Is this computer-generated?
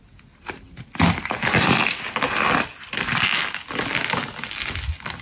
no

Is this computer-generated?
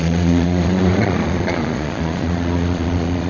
yes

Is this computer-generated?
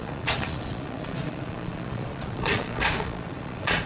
yes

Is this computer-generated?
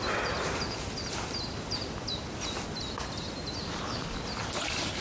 no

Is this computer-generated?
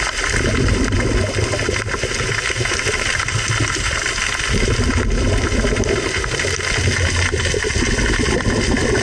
no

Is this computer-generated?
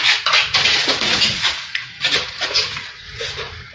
yes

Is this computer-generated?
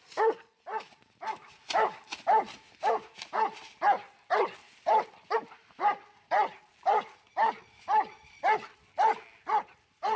no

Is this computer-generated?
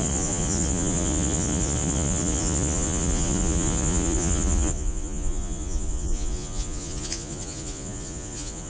yes